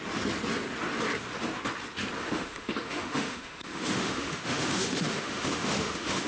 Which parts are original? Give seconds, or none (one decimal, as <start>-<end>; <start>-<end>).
0.0-2.2